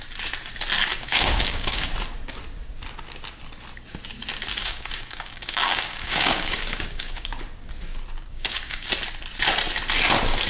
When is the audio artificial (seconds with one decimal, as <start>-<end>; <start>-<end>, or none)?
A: 0.9-1.9; 4.6-7.3; 8.3-8.9